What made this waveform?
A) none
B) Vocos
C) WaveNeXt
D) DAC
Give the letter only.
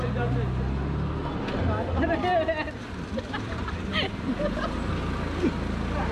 A